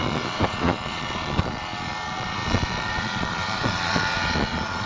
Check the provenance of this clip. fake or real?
fake